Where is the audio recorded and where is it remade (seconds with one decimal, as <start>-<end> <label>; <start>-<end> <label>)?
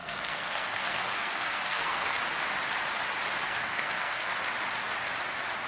0.0-2.2 remade; 2.2-3.4 recorded; 3.4-4.3 remade; 4.3-5.7 recorded